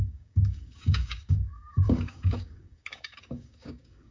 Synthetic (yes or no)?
yes